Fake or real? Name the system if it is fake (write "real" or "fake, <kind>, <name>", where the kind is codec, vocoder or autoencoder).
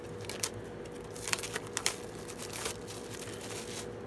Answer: real